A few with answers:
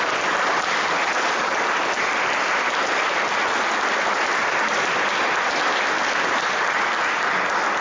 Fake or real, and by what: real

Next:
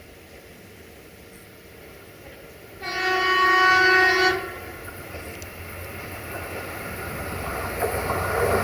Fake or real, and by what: real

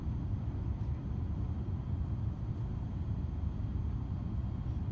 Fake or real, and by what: real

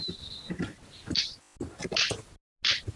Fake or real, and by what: real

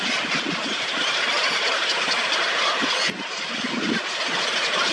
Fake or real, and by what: real